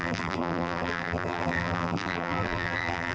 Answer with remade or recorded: remade